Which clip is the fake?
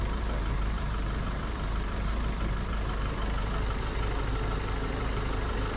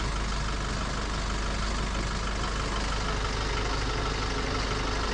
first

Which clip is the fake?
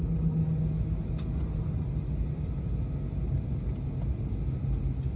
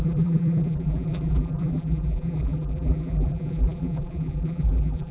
second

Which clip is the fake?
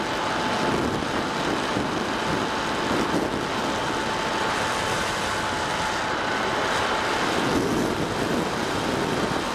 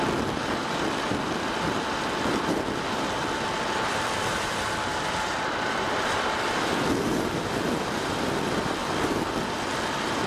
second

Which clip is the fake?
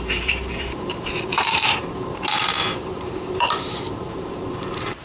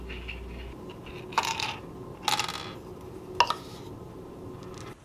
first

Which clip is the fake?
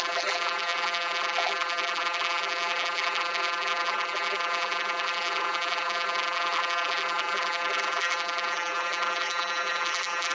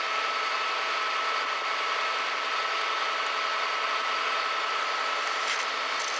first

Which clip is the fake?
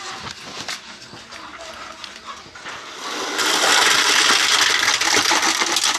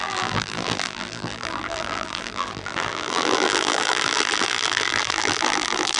second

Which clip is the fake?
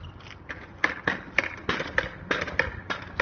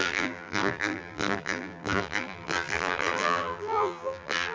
second